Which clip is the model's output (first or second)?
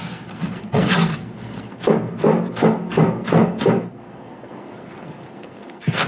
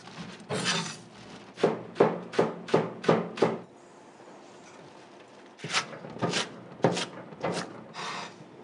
first